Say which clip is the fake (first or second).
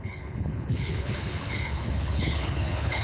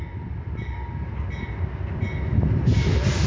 first